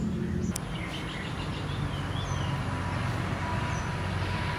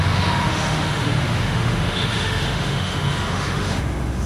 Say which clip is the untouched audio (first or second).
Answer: first